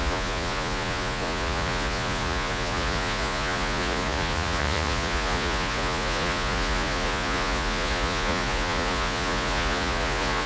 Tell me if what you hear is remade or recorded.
remade